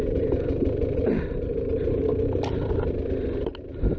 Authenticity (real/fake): real